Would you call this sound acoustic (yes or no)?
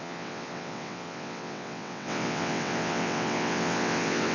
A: no